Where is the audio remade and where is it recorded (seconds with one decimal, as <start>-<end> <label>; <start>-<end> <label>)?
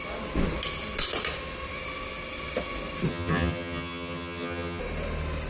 0.0-3.1 recorded; 3.1-4.8 remade; 4.8-5.5 recorded